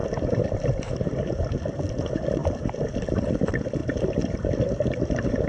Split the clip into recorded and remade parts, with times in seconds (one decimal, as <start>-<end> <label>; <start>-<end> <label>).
0.0-2.4 remade; 2.4-3.0 recorded; 3.0-5.5 remade